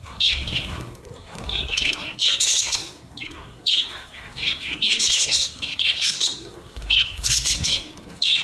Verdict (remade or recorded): remade